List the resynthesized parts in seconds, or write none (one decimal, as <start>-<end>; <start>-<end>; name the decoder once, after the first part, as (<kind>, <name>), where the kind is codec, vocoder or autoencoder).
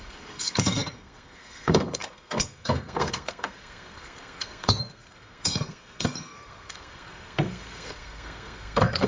0.0-9.1 (codec, SNAC)